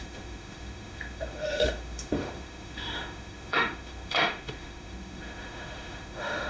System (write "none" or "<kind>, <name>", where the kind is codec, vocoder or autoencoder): autoencoder, DAC-VAE